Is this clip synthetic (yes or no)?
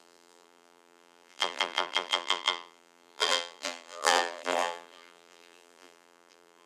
yes